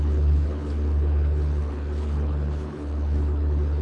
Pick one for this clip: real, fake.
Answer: fake